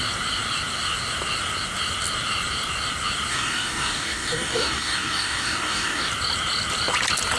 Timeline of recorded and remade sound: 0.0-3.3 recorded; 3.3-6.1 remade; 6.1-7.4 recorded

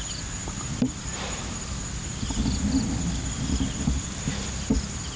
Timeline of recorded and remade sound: 0.0-5.2 recorded

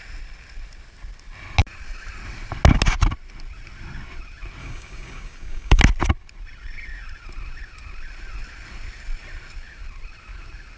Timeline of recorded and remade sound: 0.0-4.6 recorded; 4.6-5.8 remade; 5.8-10.8 recorded

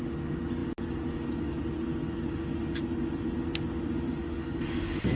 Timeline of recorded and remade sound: 0.0-4.2 recorded; 4.2-5.2 remade

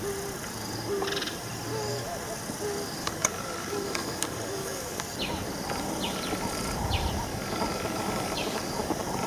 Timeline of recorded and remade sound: 0.0-3.0 recorded; 3.0-5.0 remade; 5.0-7.3 recorded; 7.3-8.9 remade; 8.9-9.3 recorded

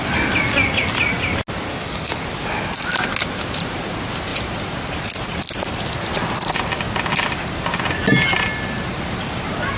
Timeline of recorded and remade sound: 0.0-1.7 recorded; 1.7-2.2 remade; 2.2-9.8 recorded

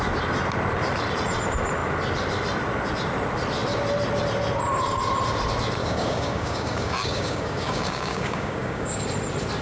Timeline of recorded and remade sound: 0.0-5.8 recorded; 5.8-9.0 remade; 9.0-9.6 recorded